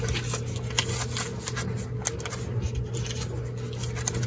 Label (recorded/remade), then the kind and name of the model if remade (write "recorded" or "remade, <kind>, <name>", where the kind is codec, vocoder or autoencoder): recorded